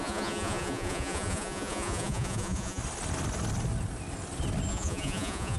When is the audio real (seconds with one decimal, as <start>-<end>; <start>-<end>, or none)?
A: 2.8-4.7